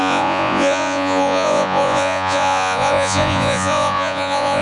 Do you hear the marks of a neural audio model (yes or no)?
yes